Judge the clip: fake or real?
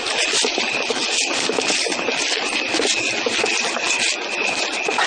real